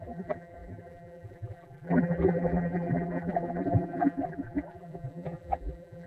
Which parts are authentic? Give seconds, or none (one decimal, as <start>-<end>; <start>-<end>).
none